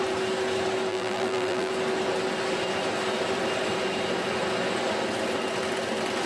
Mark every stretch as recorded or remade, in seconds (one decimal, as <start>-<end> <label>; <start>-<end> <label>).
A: 0.0-0.9 recorded; 0.9-1.7 remade; 1.7-6.3 recorded